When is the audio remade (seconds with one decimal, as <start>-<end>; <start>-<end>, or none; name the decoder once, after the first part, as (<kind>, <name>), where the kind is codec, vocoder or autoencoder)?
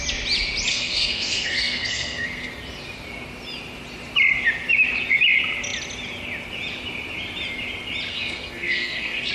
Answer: 0.7-2.5 (codec, SNAC); 8.1-9.3